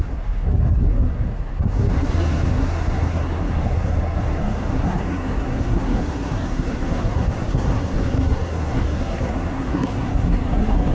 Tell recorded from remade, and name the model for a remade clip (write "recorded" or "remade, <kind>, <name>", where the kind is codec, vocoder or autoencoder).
remade, codec, SNAC